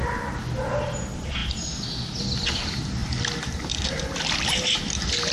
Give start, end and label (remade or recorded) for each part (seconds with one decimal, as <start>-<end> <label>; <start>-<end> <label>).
0.0-5.3 recorded